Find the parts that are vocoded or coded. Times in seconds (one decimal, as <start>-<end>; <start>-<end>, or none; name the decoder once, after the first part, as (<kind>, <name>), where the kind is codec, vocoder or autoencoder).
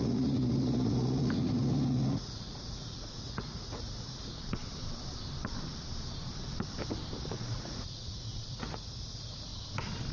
0.0-4.6 (vocoder, Vocos); 7.3-9.5